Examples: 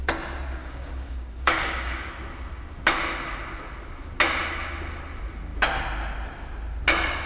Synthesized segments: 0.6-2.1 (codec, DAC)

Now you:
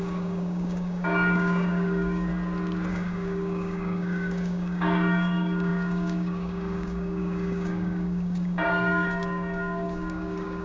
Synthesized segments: 0.0-2.3 (codec, DAC); 2.9-10.6

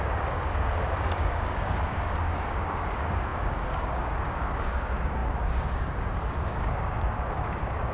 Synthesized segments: 0.0-7.9 (codec, DAC)

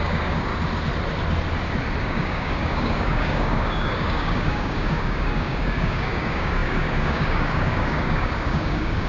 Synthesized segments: 0.0-0.5 (codec, DAC); 2.0-9.1